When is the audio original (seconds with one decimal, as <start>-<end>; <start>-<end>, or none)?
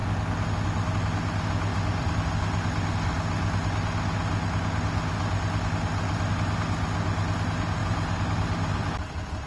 0.0-7.8; 8.9-9.5